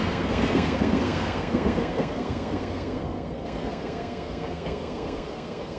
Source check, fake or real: fake